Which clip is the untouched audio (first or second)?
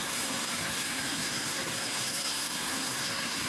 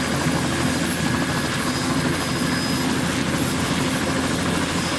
second